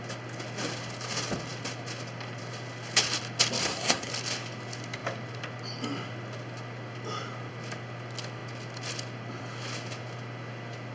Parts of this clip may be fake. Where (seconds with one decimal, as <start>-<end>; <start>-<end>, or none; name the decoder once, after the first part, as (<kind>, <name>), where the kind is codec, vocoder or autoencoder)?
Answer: 3.6-4.1 (codec, SNAC)